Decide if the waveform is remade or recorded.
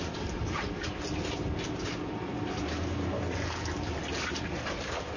recorded